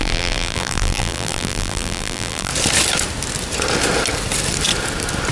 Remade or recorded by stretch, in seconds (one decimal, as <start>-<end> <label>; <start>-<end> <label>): 0.0-2.5 remade; 2.5-5.3 recorded